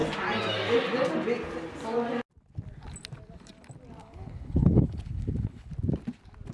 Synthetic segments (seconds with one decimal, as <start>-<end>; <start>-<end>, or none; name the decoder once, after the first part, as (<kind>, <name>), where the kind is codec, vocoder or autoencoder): 4.0-5.7 (codec, HILCodec)